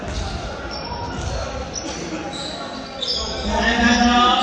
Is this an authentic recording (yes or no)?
yes